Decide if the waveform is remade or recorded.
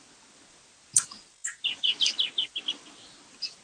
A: recorded